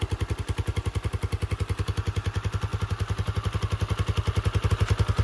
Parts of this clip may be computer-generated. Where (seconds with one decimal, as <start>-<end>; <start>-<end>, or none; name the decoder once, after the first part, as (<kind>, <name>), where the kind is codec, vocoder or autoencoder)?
none